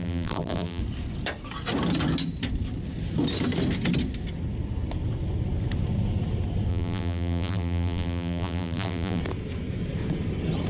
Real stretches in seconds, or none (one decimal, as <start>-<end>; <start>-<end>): 0.8-6.7; 9.2-10.7